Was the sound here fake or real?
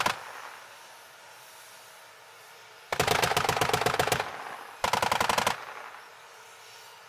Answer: real